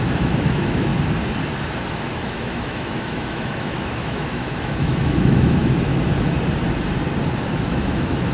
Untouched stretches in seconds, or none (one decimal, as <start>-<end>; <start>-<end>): 0.9-1.9; 5.9-7.6